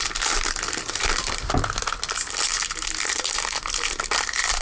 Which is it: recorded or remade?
recorded